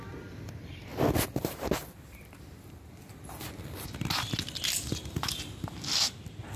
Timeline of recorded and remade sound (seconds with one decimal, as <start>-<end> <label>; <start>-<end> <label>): 0.0-6.6 recorded